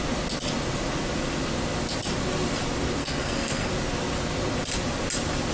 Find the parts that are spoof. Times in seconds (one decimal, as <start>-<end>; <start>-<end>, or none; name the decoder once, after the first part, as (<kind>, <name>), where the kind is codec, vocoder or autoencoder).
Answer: 3.0-3.7 (codec, SNAC)